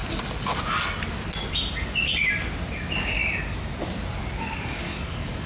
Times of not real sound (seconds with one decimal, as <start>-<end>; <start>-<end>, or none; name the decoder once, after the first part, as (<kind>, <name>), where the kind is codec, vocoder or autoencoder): 4.2-5.5 (codec, DAC)